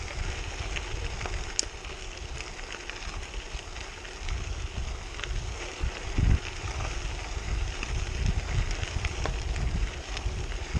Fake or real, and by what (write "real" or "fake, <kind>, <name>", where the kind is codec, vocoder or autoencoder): real